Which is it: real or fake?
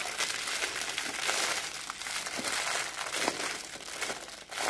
real